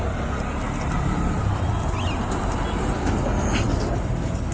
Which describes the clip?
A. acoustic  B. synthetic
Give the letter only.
A